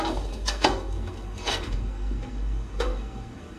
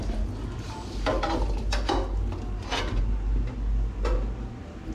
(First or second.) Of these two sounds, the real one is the second